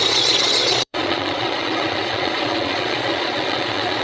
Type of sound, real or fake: fake